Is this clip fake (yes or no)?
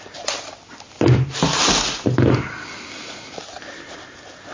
no